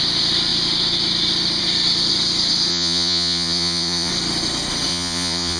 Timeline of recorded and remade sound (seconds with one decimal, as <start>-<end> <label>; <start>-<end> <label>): 0.0-2.7 recorded; 2.7-4.1 remade; 4.1-4.9 recorded; 4.9-5.6 remade